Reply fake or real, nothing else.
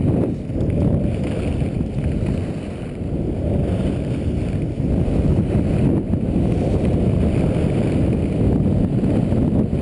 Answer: real